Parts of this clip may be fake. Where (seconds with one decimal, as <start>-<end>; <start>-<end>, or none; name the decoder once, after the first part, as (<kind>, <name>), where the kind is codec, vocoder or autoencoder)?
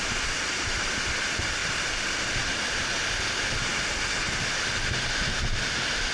none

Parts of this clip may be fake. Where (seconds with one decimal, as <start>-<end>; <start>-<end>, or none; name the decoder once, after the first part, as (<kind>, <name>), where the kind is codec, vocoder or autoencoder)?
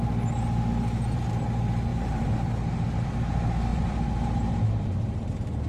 1.9-2.5 (vocoder, BigVGAN v2); 3.7-5.7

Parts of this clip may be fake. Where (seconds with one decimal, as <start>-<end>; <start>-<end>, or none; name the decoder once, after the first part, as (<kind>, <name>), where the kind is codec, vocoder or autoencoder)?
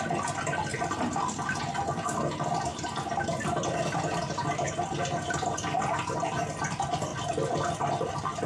none